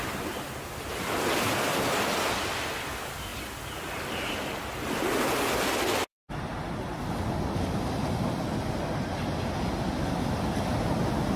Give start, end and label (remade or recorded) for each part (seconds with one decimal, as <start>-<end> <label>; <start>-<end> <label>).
0.0-6.1 recorded; 6.1-10.1 remade; 10.1-11.4 recorded